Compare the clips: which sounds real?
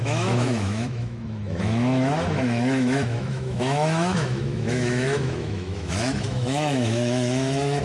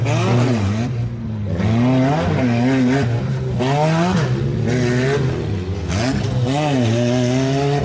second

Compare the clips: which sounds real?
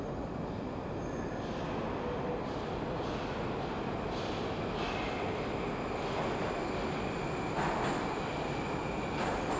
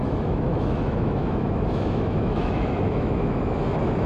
first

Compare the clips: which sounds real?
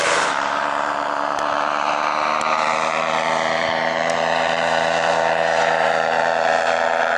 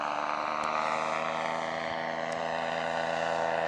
second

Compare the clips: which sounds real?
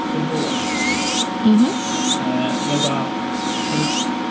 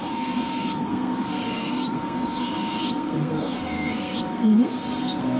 first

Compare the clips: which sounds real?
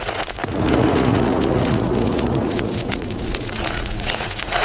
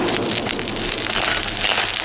second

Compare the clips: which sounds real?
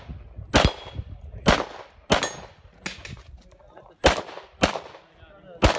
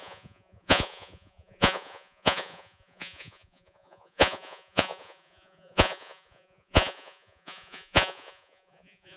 first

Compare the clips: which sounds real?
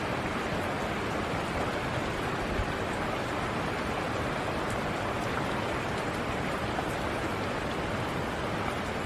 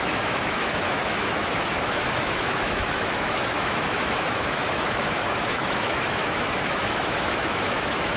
first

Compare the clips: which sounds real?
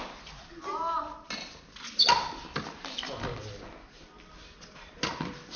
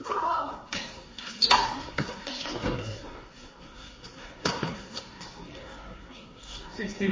first